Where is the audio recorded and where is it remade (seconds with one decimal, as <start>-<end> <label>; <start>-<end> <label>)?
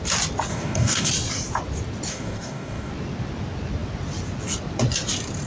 0.0-0.5 recorded; 0.5-1.1 remade; 1.1-2.1 recorded; 2.1-2.9 remade; 2.9-5.5 recorded